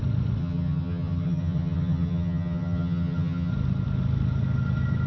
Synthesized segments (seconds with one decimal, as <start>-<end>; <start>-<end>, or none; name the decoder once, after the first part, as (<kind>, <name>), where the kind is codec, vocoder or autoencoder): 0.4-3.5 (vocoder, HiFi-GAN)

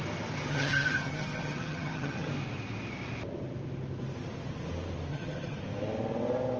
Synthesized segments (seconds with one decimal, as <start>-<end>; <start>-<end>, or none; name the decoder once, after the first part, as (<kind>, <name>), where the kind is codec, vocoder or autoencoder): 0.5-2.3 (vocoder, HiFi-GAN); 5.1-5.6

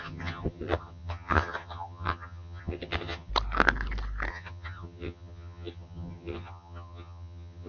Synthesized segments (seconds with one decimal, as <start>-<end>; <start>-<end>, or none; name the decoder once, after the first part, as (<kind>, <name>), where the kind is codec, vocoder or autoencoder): 0.0-3.3 (vocoder, HiFi-GAN); 4.3-7.7